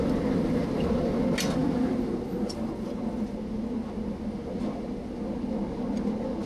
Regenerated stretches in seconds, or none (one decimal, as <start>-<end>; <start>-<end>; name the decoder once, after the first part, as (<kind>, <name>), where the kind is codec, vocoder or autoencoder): none